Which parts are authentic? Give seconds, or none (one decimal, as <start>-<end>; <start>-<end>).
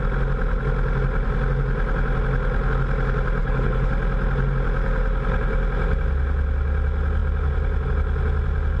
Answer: 0.0-3.4; 3.9-8.8